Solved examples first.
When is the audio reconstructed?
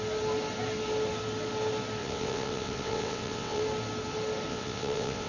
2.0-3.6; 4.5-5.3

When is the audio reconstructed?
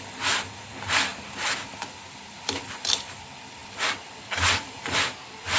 none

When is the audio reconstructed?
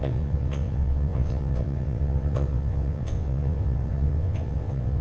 0.0-5.0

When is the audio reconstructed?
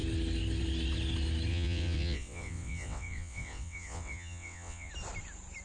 1.5-4.9